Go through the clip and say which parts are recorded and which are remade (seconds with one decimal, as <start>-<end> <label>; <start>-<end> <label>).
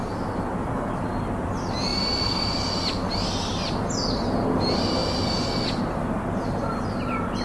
0.0-1.9 recorded; 1.9-2.6 remade; 2.6-7.4 recorded